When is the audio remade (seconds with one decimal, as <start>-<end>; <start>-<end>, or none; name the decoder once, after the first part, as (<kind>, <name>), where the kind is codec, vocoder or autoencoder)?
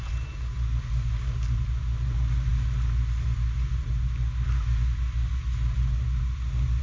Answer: none